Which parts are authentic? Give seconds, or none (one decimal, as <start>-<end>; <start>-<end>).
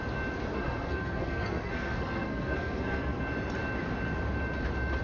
0.0-0.5; 3.2-5.0